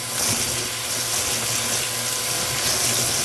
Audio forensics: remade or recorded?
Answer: recorded